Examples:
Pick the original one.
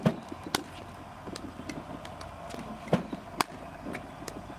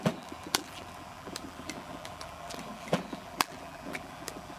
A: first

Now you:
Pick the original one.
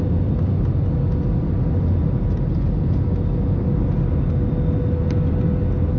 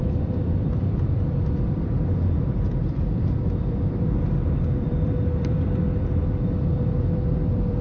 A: first